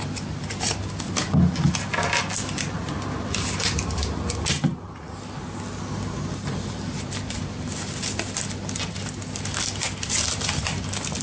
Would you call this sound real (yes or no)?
yes